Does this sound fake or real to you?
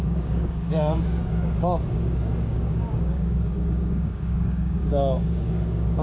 fake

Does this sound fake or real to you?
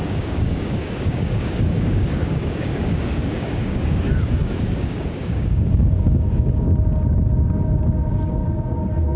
fake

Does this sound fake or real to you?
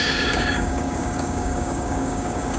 fake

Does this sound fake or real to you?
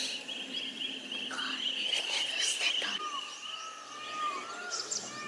real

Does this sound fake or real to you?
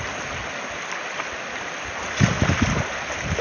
real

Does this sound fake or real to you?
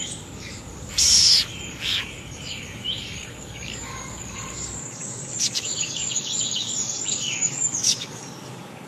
fake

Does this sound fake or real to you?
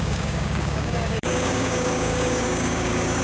fake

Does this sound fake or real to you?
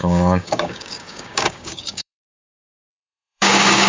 fake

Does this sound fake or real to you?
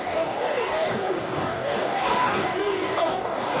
fake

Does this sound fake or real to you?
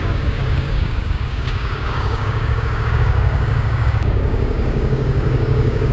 fake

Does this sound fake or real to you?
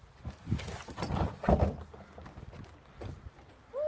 real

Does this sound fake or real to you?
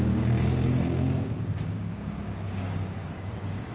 fake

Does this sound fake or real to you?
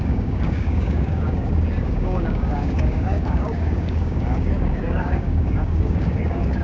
fake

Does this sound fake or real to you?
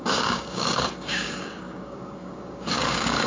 fake